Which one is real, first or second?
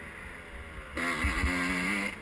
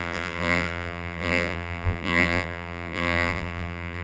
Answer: first